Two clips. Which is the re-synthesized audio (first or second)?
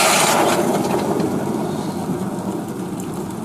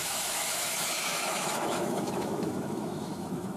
second